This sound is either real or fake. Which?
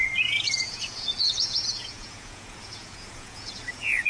fake